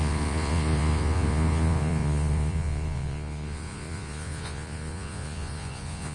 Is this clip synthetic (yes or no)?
yes